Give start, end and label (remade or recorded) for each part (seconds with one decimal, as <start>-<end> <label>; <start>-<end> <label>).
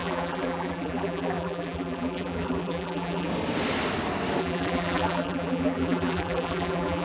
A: 0.0-3.3 remade; 3.3-4.4 recorded; 4.4-7.0 remade